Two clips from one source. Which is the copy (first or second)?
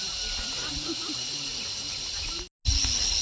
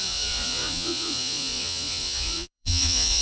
second